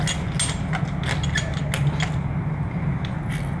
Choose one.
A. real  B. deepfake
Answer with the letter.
A